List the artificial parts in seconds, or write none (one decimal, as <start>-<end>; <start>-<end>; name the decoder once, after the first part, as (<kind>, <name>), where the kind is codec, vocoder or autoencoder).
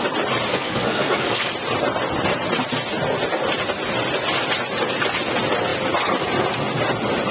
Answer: 0.5-1.5 (codec, SNAC)